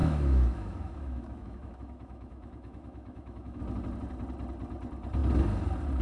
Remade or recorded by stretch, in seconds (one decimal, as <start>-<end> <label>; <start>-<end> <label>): 0.0-3.6 remade; 3.6-6.0 recorded